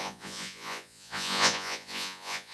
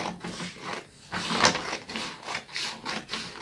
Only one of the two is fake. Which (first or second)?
first